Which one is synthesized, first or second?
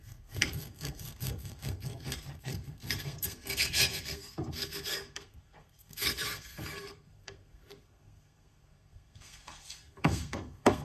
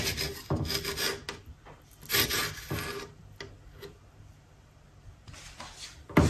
first